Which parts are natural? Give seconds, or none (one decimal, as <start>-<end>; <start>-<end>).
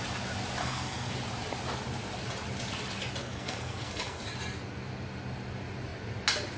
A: 0.0-0.6; 1.1-3.2; 4.2-6.6